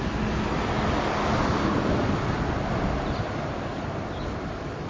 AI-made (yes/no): no